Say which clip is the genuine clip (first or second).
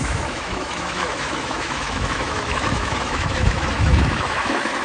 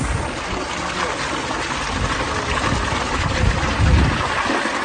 second